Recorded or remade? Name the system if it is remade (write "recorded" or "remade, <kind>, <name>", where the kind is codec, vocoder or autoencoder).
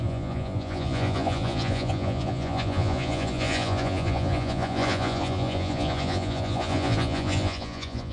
remade, vocoder, Vocos